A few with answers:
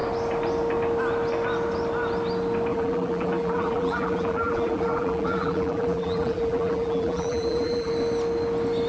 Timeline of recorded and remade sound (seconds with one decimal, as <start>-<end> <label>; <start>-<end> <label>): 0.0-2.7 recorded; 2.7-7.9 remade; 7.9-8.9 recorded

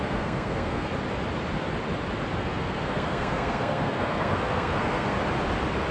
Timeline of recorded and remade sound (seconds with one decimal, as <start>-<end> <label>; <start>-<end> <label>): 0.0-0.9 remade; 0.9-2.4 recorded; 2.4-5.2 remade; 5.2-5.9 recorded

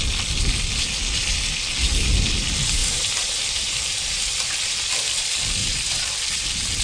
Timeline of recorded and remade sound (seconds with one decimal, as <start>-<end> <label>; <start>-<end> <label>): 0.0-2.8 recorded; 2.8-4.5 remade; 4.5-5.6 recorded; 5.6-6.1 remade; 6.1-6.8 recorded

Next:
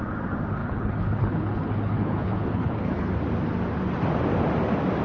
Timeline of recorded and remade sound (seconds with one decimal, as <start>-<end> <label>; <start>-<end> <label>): 0.0-0.6 recorded; 0.6-3.1 remade; 3.1-5.0 recorded

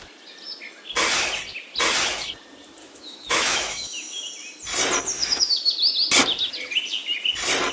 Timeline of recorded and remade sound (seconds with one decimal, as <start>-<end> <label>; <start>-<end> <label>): 0.0-2.8 recorded; 2.8-4.2 remade; 4.2-5.2 recorded; 5.2-5.7 remade; 5.7-7.7 recorded

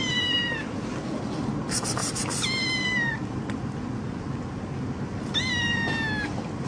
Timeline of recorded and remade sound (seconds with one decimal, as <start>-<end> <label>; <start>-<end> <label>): 0.0-6.7 recorded

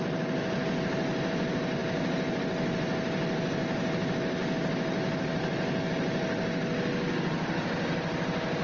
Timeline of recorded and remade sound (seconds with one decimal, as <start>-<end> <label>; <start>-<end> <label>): 0.0-8.6 recorded